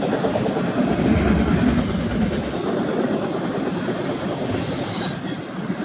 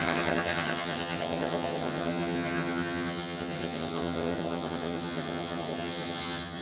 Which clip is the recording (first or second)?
first